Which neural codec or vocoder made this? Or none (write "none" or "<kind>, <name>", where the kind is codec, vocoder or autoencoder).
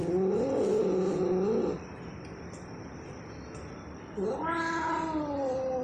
none